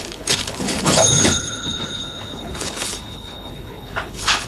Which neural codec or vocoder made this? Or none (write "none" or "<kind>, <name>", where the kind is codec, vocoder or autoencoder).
codec, HILCodec